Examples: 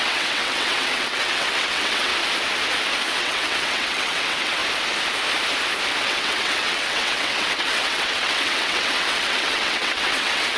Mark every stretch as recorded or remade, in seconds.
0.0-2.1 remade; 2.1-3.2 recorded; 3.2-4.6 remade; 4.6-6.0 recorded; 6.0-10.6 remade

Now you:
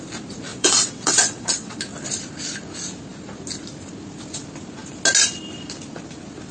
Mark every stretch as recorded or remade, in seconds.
0.0-0.5 recorded; 0.5-1.8 remade; 1.8-6.5 recorded

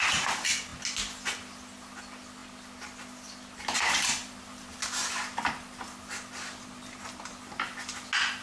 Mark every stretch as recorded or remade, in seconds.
0.0-8.4 recorded

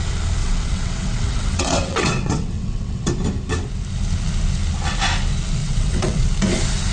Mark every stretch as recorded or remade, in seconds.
0.0-0.4 recorded; 0.4-3.1 remade; 3.1-5.6 recorded; 5.6-6.3 remade; 6.3-6.9 recorded

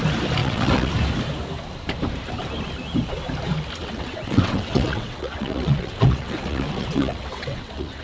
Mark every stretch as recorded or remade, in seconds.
0.0-0.4 recorded; 0.4-0.9 remade; 0.9-3.8 recorded; 3.8-8.0 remade